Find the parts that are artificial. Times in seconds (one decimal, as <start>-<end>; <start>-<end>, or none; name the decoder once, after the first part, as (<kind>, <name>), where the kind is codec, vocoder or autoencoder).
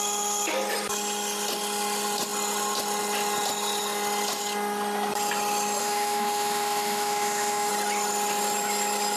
5.8-7.7 (autoencoder, DAC-VAE)